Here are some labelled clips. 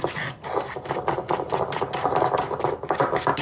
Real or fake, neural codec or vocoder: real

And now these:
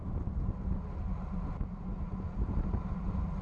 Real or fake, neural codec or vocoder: real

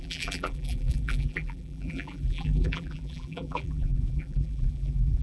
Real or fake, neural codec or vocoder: fake, vocoder, BigVGAN v2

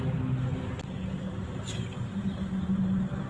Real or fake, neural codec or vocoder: real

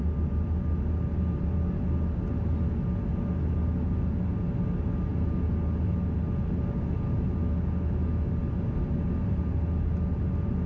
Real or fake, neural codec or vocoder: real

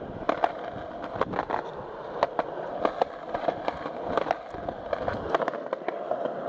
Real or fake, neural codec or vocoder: real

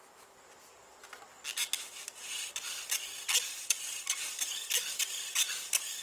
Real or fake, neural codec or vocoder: real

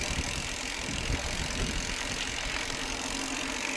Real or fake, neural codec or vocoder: fake, vocoder, BigVGAN v2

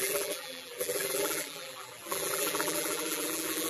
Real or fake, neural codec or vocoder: fake, vocoder, BigVGAN v2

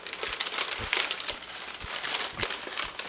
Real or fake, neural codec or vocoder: real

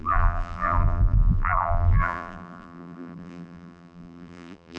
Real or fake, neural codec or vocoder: fake, vocoder, BigVGAN v2